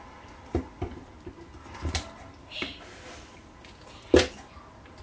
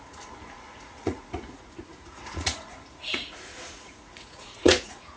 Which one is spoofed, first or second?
second